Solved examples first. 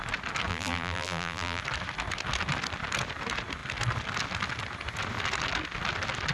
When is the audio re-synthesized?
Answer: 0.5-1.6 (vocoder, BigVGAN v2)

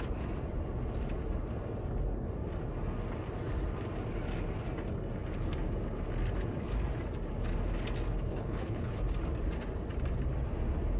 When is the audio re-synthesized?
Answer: 8.3-9.0 (codec, HILCodec)